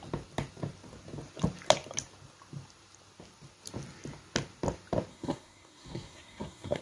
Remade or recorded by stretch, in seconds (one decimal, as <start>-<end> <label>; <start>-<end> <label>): 0.0-5.1 recorded; 5.1-6.8 remade